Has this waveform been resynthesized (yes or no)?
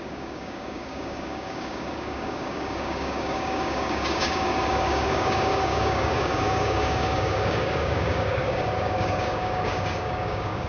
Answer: yes